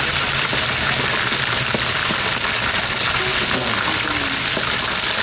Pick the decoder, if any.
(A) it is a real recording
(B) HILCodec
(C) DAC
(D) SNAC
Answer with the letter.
A